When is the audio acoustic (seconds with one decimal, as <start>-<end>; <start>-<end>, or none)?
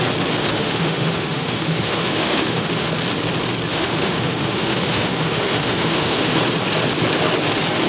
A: 0.0-0.4; 2.9-3.7; 6.4-7.9